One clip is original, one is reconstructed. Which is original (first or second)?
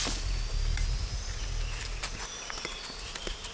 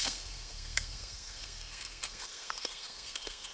first